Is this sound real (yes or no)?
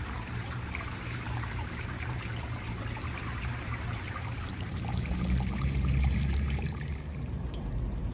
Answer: no